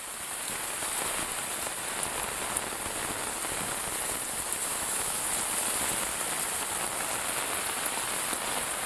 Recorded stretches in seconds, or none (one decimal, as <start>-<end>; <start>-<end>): 0.0-4.7; 5.3-8.9